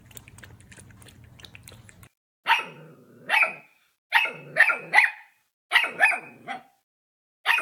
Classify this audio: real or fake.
real